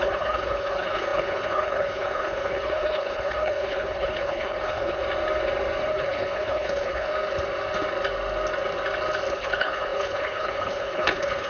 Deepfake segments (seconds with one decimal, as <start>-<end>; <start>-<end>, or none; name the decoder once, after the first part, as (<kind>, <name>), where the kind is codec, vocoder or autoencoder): 0.0-5.0 (codec, HILCodec); 5.9-7.1; 9.3-11.5